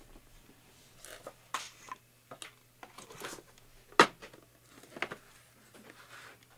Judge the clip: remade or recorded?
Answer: recorded